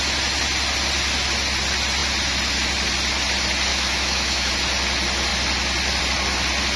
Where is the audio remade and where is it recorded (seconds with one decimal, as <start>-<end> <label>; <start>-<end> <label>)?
0.0-3.7 recorded; 3.7-4.5 remade; 4.5-6.8 recorded